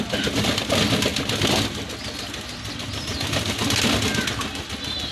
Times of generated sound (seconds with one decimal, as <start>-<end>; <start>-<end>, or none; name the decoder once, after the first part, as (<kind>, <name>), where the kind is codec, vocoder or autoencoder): none